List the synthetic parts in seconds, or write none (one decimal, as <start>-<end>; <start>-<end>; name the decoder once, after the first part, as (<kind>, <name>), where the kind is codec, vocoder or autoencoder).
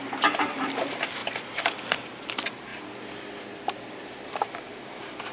0.0-1.2 (vocoder, BigVGAN v2); 1.8-2.7; 4.0-5.3